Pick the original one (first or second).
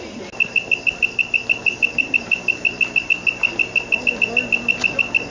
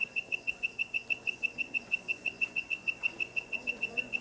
first